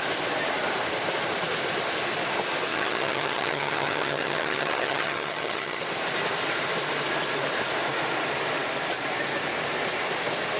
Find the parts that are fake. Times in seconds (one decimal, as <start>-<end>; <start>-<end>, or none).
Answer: 2.7-5.8